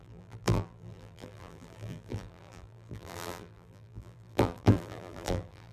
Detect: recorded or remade remade